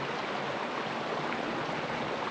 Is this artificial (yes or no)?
no